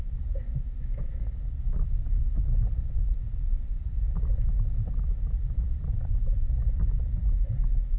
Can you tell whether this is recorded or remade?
recorded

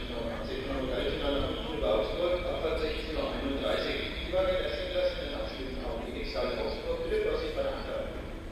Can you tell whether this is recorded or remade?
recorded